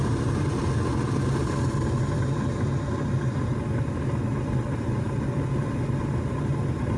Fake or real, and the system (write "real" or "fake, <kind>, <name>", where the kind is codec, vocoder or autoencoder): real